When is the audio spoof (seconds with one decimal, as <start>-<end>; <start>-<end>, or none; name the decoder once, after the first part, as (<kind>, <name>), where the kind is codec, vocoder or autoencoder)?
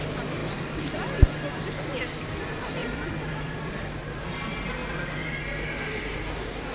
0.4-1.6 (vocoder, BigVGAN v2); 2.8-3.7; 4.8-5.4